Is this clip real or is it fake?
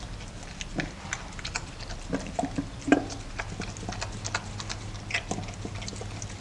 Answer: real